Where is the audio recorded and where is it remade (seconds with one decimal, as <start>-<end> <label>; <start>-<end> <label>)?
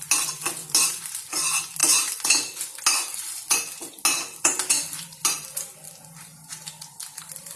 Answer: 0.0-7.6 recorded